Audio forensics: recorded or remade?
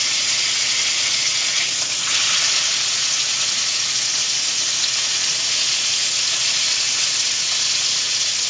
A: remade